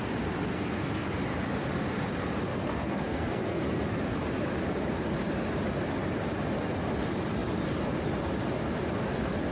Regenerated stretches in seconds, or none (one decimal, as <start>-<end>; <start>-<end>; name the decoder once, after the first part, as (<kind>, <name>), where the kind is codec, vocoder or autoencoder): 0.5-1.1 (codec, SNAC); 2.5-3.6